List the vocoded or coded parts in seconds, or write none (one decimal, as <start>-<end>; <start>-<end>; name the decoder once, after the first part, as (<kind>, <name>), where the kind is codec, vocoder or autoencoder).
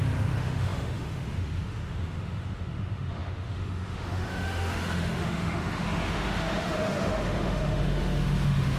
0.0-8.8 (autoencoder, DAC-VAE)